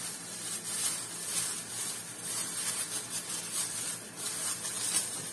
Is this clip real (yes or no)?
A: yes